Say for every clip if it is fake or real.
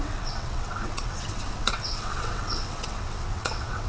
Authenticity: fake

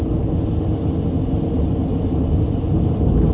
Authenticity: real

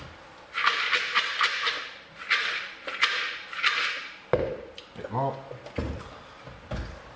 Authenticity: real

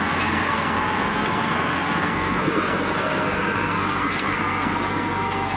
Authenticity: fake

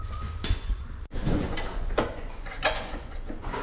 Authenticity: fake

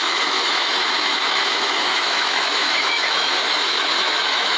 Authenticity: fake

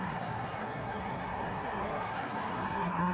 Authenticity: fake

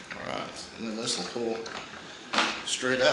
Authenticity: fake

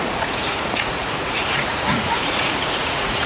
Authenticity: fake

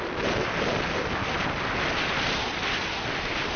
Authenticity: real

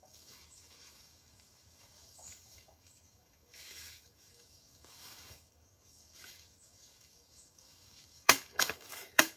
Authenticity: fake